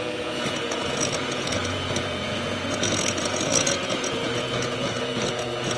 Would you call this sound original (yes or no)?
no